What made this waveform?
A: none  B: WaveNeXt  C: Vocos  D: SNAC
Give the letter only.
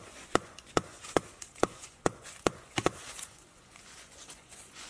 C